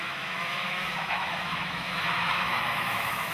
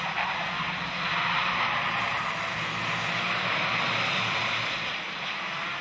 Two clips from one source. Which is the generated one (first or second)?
first